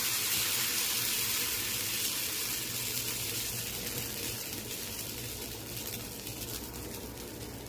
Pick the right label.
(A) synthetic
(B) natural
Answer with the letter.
B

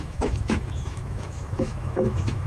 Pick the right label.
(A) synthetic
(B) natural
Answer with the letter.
A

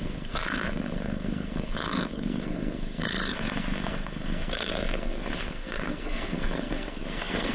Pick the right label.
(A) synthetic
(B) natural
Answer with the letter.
A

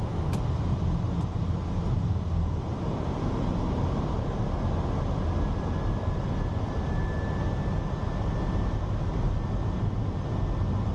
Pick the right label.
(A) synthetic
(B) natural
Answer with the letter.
B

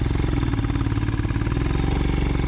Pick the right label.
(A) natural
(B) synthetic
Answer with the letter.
A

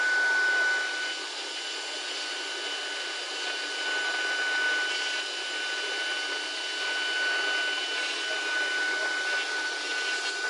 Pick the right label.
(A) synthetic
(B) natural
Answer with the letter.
B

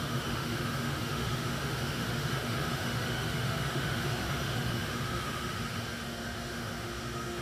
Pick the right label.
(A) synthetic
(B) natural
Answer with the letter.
A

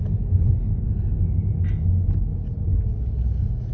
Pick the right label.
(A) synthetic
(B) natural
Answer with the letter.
B